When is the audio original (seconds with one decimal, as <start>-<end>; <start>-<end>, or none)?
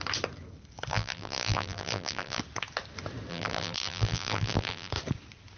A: 0.0-0.9; 2.4-3.3; 4.9-5.6